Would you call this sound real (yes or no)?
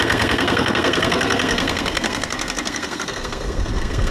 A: no